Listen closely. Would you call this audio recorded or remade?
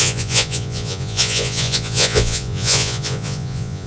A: remade